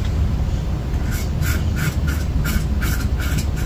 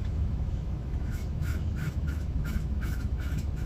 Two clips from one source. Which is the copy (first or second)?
second